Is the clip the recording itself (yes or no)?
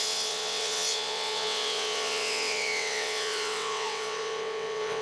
no